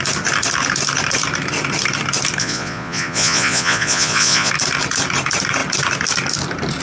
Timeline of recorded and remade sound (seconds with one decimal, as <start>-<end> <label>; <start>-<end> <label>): 0.0-2.4 recorded; 2.4-4.5 remade; 4.5-6.8 recorded